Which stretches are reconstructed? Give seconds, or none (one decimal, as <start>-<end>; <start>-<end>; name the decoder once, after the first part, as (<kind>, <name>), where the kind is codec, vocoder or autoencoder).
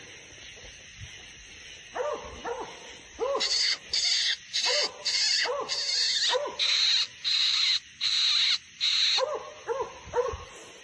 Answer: none